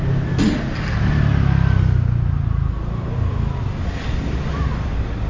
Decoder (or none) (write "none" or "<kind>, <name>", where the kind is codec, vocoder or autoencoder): none